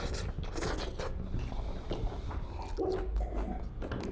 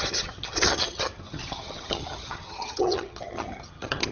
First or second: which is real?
first